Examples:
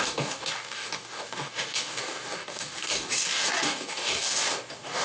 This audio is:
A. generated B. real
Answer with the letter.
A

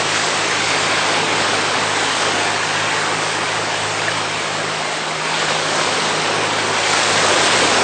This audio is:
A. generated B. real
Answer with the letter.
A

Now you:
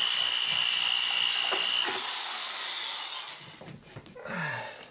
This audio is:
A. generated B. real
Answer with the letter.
B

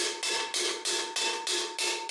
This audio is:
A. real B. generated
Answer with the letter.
A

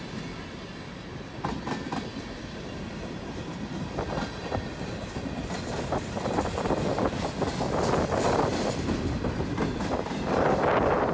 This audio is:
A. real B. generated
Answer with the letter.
A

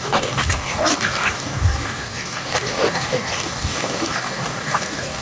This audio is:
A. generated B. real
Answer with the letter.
A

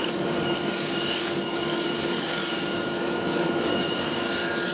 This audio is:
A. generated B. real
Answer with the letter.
A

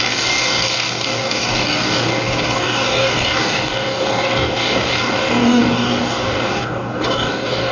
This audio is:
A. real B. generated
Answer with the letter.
B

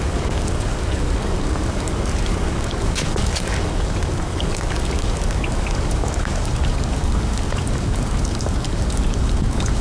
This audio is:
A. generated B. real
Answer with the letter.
A